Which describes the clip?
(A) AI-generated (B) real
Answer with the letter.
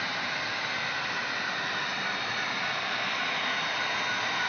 B